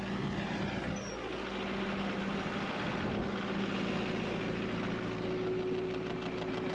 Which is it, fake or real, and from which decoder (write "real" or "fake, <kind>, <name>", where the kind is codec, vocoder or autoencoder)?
real